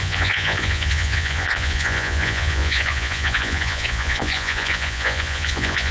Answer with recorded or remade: remade